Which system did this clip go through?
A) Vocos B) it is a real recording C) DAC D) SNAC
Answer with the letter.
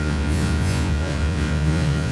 A